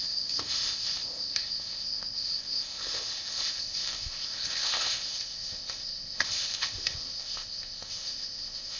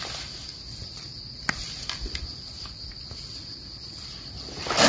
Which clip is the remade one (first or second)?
first